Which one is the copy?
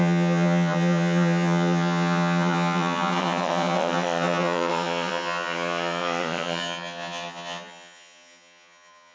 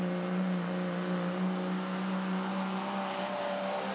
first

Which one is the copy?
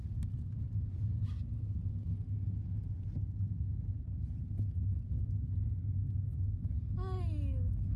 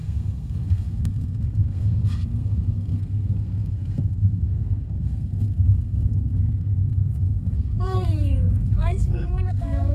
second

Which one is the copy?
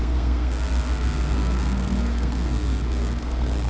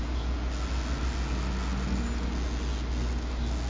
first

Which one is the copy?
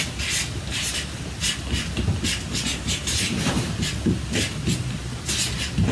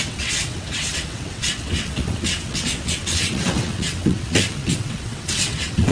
second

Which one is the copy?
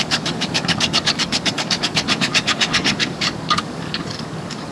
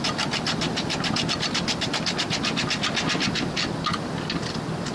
first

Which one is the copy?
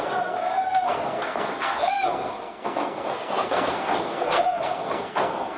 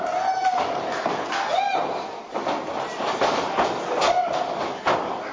first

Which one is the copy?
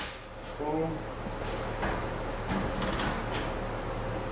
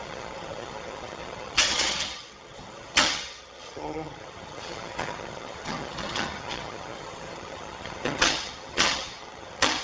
second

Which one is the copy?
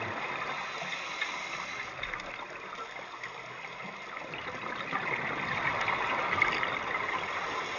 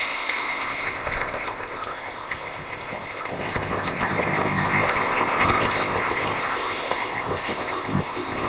second